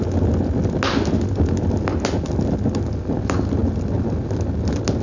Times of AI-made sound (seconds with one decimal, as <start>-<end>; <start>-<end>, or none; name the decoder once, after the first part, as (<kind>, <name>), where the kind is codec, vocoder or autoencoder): none